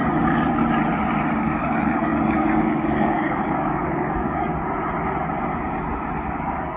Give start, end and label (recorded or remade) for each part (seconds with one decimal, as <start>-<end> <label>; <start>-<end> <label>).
0.0-1.4 recorded; 1.4-4.5 remade; 4.5-6.3 recorded; 6.3-6.8 remade